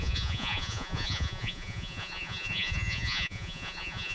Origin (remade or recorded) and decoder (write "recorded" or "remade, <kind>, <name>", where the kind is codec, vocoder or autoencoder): remade, vocoder, Vocos